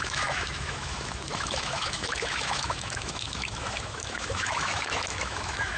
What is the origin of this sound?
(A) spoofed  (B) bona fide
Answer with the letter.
A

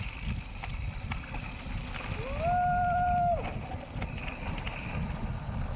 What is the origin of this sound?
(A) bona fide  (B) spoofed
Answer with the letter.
A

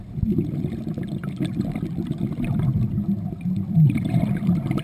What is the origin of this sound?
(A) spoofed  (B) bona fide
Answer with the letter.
B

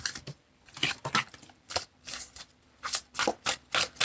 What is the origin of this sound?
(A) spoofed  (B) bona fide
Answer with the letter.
B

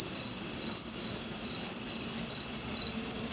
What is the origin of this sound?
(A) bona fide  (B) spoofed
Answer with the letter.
A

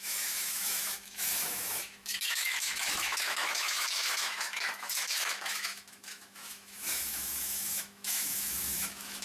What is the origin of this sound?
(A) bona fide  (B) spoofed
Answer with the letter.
B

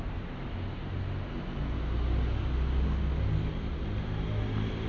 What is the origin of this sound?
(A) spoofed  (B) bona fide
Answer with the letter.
B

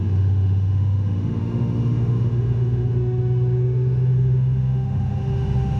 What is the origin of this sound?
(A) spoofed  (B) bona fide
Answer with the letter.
A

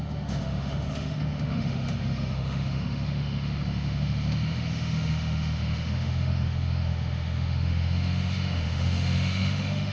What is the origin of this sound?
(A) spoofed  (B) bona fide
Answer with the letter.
A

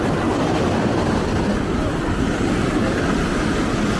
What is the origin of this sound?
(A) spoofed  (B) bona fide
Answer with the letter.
B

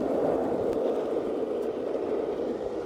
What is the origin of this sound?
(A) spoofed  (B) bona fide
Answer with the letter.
B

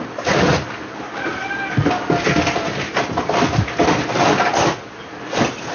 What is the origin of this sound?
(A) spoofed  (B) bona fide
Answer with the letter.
B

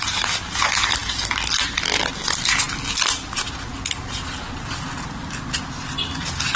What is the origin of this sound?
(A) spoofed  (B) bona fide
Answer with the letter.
B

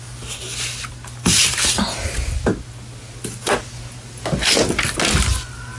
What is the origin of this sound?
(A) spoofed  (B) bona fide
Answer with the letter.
B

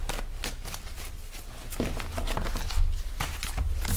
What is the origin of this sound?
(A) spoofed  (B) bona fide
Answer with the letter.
B